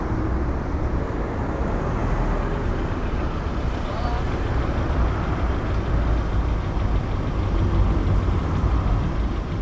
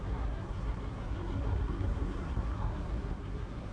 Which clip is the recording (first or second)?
first